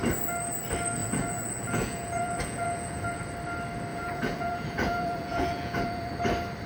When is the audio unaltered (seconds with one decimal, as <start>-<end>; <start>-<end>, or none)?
0.0-1.0; 3.2-3.9; 6.1-6.7